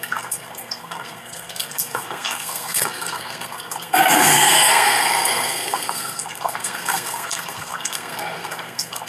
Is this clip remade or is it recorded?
remade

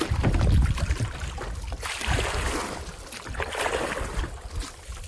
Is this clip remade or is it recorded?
recorded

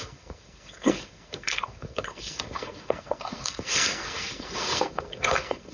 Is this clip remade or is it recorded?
remade